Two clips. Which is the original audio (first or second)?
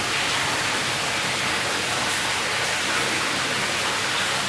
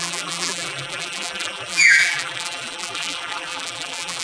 first